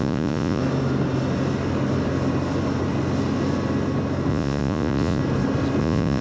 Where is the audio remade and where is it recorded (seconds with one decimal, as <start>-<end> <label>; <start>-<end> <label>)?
0.0-0.6 remade; 0.6-4.3 recorded; 4.3-5.2 remade; 5.2-5.8 recorded; 5.8-6.2 remade